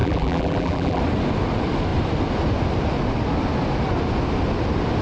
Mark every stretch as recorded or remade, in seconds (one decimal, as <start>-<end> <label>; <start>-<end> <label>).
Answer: 0.0-1.0 remade; 1.0-5.0 recorded